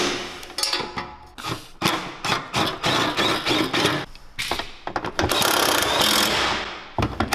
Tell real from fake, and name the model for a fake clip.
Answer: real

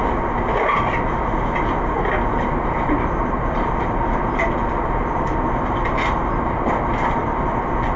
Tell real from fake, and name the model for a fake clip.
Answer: real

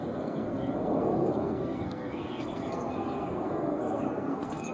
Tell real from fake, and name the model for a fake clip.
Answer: fake, codec, SNAC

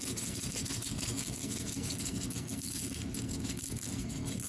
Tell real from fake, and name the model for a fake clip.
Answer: fake, codec, SNAC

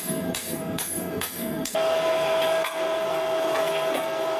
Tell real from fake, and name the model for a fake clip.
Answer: fake, codec, SNAC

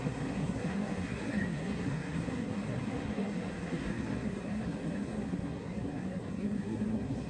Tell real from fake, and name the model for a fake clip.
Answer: fake, codec, SNAC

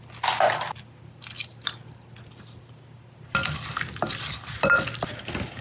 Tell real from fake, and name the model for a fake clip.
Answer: real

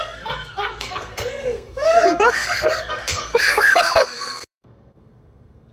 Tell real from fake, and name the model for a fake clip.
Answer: fake, codec, SNAC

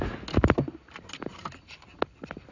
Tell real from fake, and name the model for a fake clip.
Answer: real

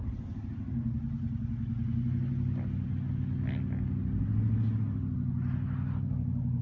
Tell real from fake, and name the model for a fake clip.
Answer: real